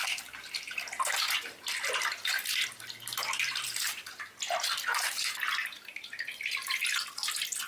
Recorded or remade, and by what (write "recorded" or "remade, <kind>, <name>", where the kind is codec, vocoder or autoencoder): recorded